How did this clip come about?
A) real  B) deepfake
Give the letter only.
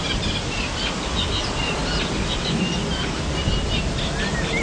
A